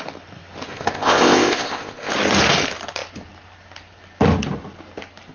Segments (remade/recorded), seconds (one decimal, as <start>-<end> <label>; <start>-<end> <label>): 0.0-0.7 recorded; 0.7-2.1 remade; 2.1-5.3 recorded